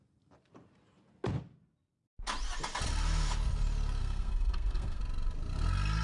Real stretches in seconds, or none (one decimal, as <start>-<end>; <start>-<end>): 0.0-4.0; 5.0-6.0